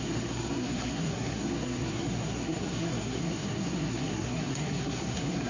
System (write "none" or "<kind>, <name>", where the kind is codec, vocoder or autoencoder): codec, SNAC